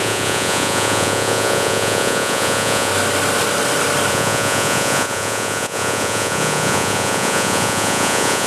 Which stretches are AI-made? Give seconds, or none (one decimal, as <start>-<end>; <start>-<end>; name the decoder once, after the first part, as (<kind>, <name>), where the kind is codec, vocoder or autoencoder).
0.0-2.9 (vocoder, Vocos); 4.1-8.5